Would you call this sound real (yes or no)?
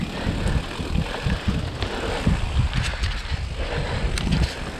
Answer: yes